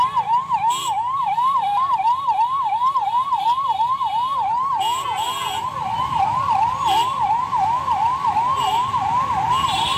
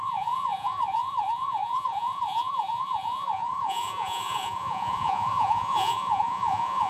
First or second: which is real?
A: first